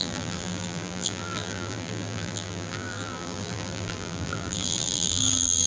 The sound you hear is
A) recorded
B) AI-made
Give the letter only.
B